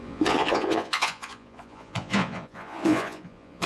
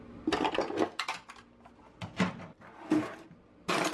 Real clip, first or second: second